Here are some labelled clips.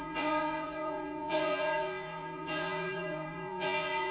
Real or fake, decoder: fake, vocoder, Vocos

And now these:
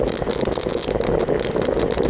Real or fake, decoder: real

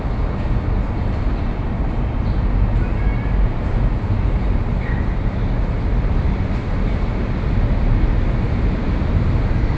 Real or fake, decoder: real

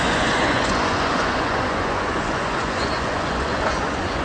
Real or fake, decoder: fake, vocoder, Vocos